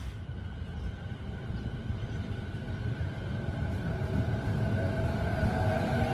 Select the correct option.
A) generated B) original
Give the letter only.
B